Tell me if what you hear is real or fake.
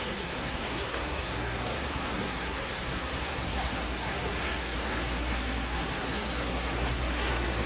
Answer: fake